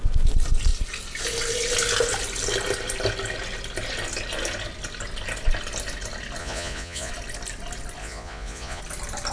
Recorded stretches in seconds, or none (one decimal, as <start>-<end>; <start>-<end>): 0.0-6.4; 7.1-8.0; 8.8-9.3